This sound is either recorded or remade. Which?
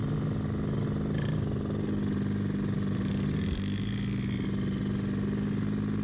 recorded